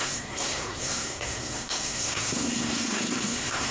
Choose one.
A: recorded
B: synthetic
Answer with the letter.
B